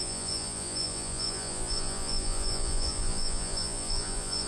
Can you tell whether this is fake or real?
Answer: fake